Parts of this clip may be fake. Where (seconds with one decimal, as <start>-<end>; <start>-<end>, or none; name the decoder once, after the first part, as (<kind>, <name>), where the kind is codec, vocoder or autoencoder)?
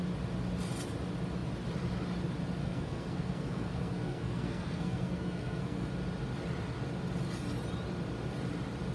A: 2.6-5.9 (codec, SNAC)